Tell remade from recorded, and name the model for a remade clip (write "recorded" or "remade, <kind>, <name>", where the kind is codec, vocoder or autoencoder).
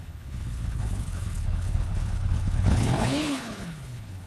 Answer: remade, codec, HILCodec